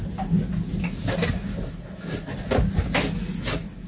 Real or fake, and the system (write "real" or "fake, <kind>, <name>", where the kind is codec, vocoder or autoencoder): real